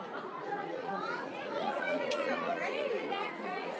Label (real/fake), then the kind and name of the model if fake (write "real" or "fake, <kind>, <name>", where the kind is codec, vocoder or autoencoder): fake, vocoder, Vocos